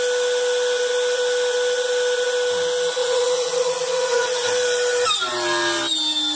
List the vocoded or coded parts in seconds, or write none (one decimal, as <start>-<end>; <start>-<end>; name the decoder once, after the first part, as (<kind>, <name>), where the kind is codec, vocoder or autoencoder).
3.0-4.5 (vocoder, Vocos)